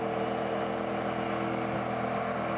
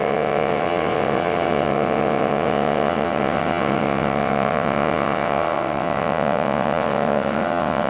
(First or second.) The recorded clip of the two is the first